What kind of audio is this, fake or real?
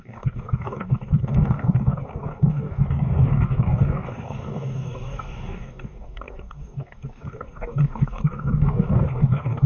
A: fake